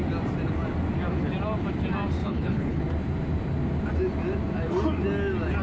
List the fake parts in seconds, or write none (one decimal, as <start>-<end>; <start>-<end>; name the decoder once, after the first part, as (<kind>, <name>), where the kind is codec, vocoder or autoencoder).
2.2-2.8 (codec, HILCodec)